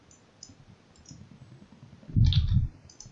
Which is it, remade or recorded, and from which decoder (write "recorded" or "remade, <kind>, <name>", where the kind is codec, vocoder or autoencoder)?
recorded